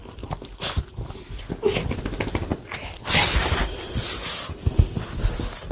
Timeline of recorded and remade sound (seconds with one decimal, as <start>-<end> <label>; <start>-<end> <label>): 0.0-5.7 recorded